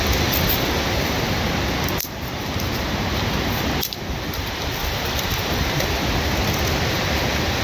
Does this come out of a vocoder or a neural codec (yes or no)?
no